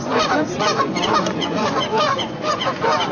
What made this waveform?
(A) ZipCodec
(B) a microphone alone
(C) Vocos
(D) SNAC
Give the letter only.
C